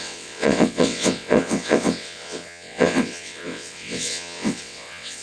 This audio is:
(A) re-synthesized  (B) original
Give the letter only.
A